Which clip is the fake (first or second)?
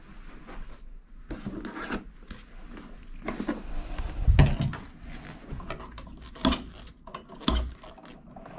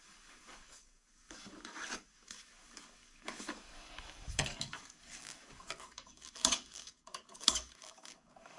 second